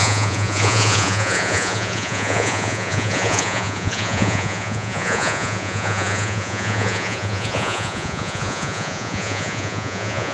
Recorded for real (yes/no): no